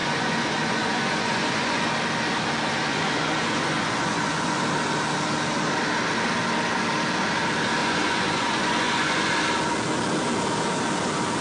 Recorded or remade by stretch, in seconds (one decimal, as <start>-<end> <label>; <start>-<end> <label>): 0.0-1.9 remade; 1.9-2.9 recorded; 2.9-4.6 remade; 4.6-7.8 recorded; 7.8-9.3 remade; 9.3-11.4 recorded